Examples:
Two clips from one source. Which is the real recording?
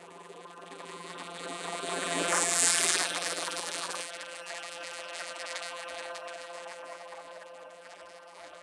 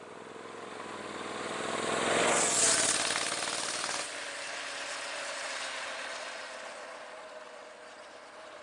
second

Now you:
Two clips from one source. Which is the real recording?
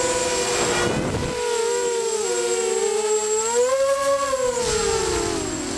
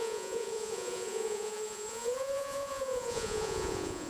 first